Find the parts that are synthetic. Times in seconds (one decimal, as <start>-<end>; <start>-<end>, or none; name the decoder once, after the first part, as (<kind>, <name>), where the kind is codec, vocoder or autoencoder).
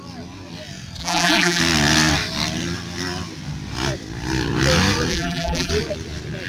1.0-1.6 (vocoder, BigVGAN v2); 5.1-5.7